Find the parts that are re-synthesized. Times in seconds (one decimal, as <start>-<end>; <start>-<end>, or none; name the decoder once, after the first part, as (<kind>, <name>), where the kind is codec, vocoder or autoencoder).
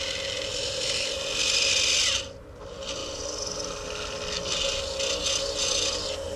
none